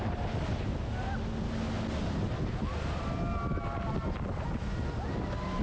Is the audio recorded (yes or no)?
yes